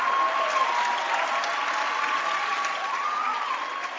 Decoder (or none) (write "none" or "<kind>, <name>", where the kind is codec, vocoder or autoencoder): vocoder, BigVGAN v2